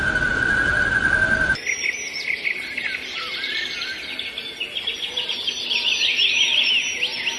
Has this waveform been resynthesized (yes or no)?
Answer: no